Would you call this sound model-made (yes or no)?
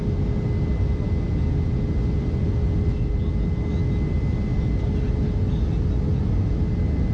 no